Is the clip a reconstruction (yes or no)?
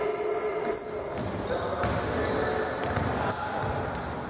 no